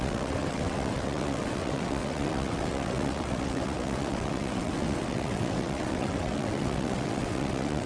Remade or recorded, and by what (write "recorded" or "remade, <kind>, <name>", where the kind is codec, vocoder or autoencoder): remade, vocoder, WaveNeXt